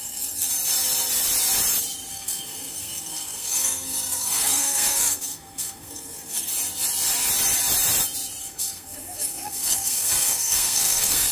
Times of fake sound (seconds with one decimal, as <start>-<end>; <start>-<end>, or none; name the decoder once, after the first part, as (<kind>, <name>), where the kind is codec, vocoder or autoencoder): 0.0-0.5 (codec, SNAC); 2.1-6.5; 8.4-11.3